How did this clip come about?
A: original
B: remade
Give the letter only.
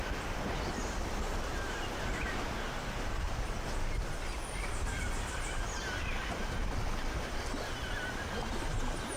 A